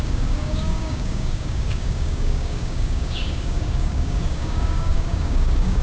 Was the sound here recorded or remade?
remade